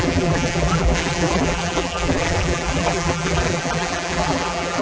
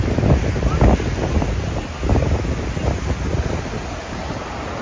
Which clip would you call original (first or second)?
second